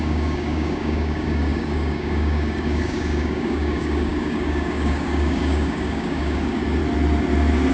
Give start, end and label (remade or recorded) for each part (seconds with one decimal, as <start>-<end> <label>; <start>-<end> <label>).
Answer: 0.0-6.8 remade; 6.8-7.7 recorded